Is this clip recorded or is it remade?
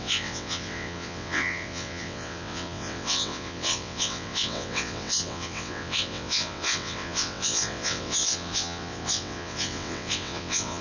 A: remade